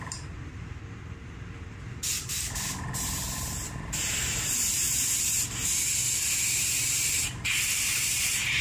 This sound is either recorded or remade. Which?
remade